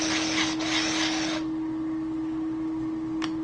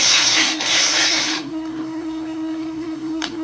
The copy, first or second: second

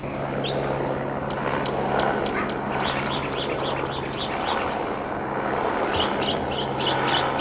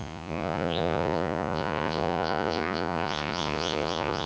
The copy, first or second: second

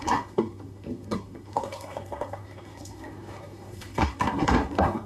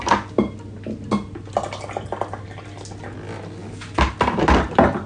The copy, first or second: first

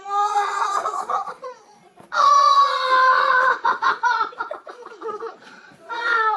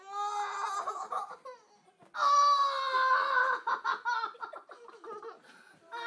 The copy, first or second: first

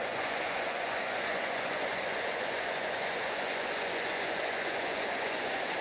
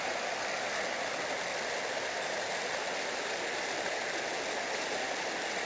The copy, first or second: first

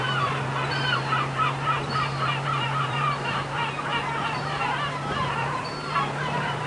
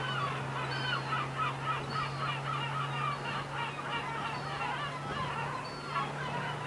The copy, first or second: first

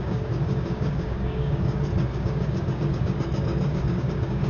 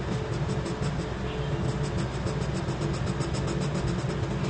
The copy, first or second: first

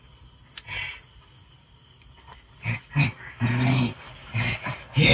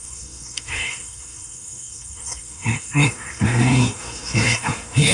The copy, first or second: second